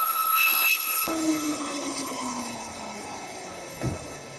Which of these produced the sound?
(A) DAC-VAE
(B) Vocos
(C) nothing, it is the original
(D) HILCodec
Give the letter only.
D